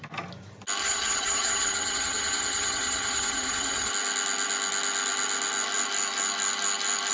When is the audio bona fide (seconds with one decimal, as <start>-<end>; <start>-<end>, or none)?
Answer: 0.0-0.8; 3.9-7.1